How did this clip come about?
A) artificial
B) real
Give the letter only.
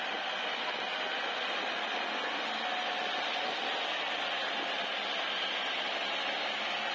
B